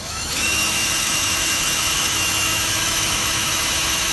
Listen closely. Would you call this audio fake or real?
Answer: fake